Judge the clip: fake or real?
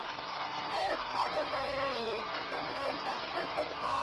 fake